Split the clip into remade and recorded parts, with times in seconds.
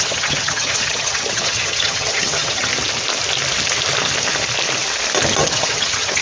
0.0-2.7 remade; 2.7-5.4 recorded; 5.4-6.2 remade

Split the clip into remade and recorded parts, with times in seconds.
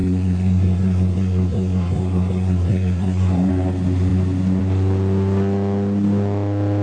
0.0-3.5 remade; 3.5-6.8 recorded